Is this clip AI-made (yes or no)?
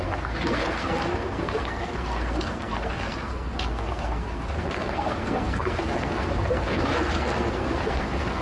yes